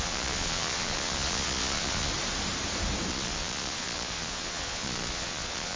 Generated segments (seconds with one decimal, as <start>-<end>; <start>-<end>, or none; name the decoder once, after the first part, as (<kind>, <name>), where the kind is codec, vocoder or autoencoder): 0.0-2.1 (vocoder, Vocos); 3.1-5.8